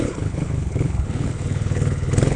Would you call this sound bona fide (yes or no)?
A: no